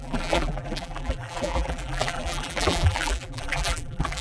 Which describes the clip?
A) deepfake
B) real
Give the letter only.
A